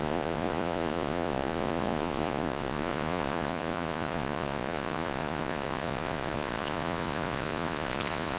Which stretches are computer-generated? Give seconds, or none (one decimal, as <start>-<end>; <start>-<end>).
0.0-8.4